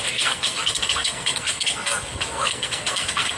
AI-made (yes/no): yes